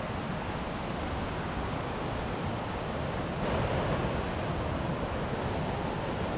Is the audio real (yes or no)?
yes